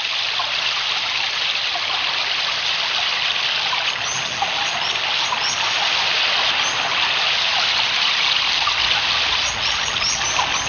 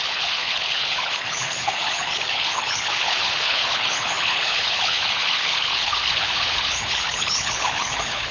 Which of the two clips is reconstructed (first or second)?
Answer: second